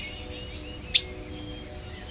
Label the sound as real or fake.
real